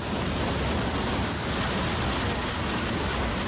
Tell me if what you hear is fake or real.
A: real